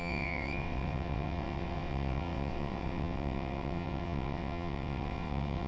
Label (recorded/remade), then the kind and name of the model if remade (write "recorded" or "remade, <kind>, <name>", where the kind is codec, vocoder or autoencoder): remade, vocoder, WaveNeXt